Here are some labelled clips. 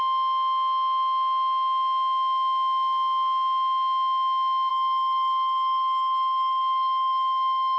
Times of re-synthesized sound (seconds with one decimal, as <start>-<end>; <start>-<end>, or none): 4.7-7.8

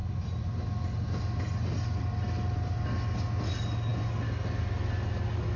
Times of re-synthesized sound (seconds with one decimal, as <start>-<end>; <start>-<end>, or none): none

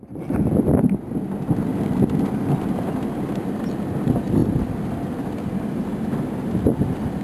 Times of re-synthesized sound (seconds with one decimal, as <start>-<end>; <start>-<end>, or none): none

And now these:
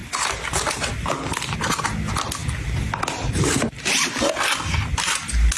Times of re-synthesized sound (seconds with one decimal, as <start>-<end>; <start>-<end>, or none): none

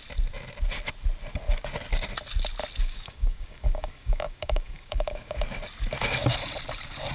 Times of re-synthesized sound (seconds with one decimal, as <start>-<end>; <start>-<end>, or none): 2.8-5.4

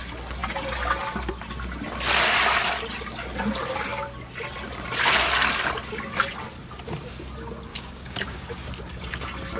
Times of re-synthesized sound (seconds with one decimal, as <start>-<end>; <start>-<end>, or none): 7.7-8.7

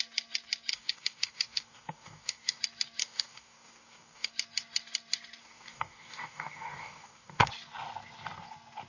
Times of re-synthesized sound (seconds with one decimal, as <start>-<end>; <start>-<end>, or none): 0.7-2.6; 3.0-4.3; 5.4-7.5

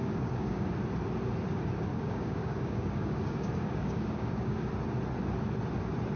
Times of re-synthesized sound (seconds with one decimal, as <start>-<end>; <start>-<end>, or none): 0.0-0.7; 1.9-4.7